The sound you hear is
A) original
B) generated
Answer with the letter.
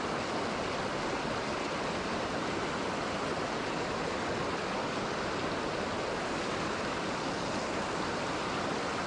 A